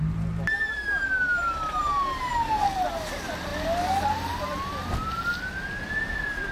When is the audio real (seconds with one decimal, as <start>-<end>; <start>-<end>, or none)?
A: 0.0-6.5